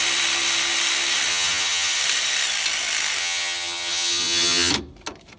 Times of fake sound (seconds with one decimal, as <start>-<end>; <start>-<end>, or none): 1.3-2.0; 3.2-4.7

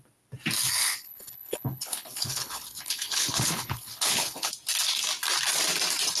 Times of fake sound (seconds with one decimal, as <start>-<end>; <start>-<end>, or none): 0.8-4.5

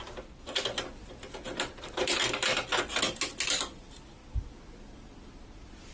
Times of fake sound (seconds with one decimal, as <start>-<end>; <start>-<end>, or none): none